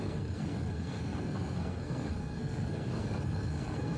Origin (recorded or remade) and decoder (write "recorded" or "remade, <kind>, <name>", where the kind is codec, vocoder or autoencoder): remade, codec, SNAC